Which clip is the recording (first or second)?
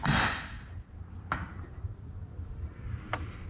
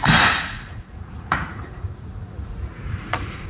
first